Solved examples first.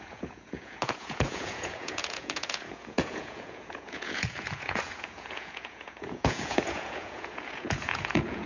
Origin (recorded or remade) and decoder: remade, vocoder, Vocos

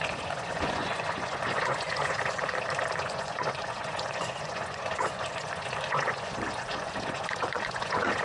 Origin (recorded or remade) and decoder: remade, vocoder, Vocos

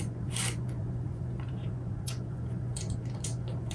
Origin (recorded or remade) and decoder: remade, vocoder, Vocos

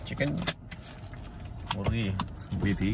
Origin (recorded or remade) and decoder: recorded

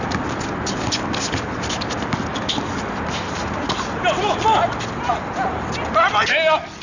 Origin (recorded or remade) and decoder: recorded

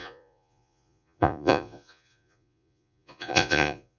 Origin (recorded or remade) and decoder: remade, vocoder, Vocos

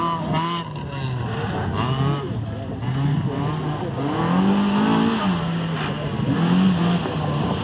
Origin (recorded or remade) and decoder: recorded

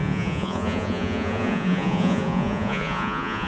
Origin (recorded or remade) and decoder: remade, vocoder, Vocos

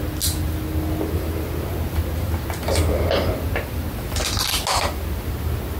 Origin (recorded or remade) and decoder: recorded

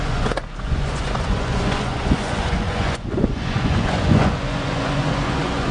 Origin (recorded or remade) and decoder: remade, vocoder, Vocos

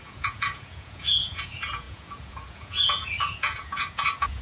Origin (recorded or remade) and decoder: remade, vocoder, Vocos